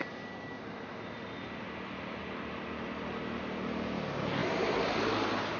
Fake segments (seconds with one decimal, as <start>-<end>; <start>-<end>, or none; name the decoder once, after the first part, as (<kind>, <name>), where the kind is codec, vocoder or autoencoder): none